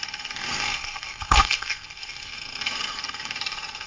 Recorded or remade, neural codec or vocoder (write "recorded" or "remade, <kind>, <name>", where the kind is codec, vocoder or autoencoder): remade, codec, SNAC